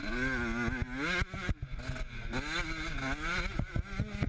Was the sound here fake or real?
real